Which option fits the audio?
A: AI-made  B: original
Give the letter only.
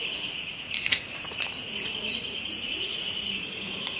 A